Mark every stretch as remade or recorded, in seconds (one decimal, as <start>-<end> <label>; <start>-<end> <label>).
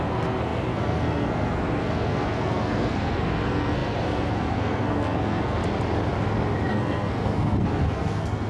0.0-5.6 remade; 5.6-6.7 recorded; 6.7-8.5 remade